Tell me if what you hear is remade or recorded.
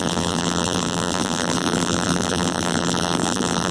remade